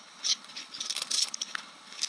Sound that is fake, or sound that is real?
fake